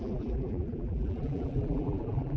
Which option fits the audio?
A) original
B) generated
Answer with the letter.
B